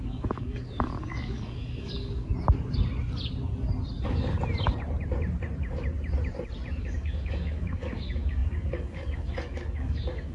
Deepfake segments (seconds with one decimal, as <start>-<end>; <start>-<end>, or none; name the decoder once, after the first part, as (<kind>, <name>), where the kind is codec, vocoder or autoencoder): 0.0-2.3 (codec, DAC); 6.8-10.3